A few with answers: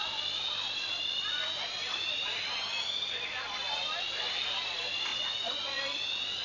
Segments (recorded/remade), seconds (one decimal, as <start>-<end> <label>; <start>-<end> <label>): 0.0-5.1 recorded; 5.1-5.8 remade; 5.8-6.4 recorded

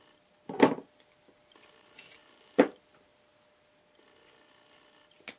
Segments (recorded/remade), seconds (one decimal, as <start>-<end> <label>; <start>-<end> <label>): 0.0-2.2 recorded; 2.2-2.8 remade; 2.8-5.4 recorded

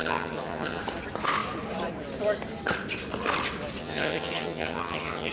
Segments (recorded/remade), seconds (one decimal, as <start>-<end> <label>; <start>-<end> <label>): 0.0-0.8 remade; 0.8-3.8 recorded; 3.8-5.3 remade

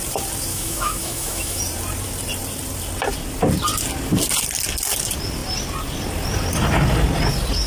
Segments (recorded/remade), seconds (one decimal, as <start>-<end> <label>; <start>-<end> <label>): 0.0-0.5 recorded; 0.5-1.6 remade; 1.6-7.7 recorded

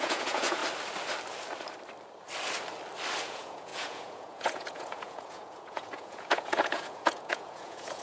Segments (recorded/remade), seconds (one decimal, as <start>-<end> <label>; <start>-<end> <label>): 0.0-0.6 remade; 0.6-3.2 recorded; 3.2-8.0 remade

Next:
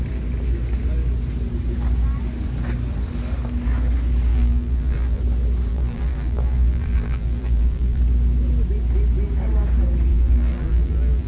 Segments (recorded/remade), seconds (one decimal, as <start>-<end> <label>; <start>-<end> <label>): 0.0-4.3 recorded; 4.3-5.2 remade; 5.2-5.7 recorded; 5.7-8.0 remade; 8.0-10.1 recorded; 10.1-11.3 remade

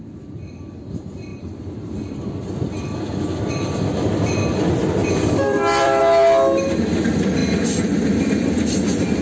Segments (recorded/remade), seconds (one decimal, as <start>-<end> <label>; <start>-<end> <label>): 0.0-1.3 recorded; 1.3-2.7 remade; 2.7-5.0 recorded; 5.0-6.0 remade; 6.0-7.4 recorded; 7.4-9.2 remade

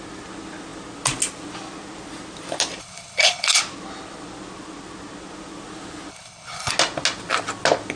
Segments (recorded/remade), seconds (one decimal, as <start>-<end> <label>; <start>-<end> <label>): 0.0-2.8 recorded; 2.8-3.6 remade; 3.6-6.1 recorded; 6.1-6.7 remade; 6.7-8.0 recorded